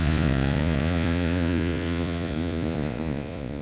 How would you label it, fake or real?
fake